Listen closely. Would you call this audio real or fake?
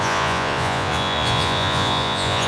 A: fake